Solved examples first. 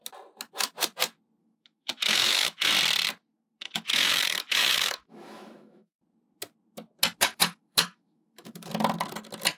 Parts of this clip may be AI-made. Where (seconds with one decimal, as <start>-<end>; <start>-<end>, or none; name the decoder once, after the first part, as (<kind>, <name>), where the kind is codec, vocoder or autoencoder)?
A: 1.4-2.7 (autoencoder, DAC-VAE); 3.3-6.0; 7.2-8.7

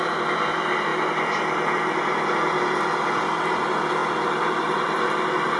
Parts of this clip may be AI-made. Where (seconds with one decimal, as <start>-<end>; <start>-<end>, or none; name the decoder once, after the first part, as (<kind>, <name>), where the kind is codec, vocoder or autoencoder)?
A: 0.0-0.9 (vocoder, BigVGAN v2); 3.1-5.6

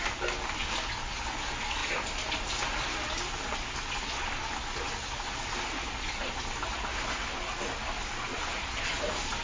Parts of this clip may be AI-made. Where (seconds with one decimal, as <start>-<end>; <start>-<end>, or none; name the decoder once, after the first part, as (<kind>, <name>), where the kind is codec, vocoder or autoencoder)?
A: none